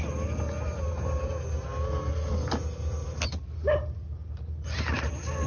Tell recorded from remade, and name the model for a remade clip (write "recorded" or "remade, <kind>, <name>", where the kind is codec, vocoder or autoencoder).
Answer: recorded